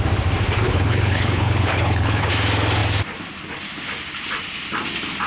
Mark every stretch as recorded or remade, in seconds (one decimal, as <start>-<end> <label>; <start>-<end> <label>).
0.0-0.6 recorded; 0.6-2.3 remade; 2.3-5.3 recorded